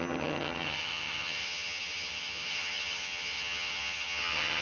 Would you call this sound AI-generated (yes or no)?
yes